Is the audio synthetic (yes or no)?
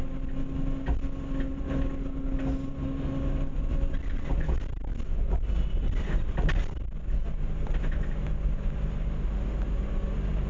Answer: no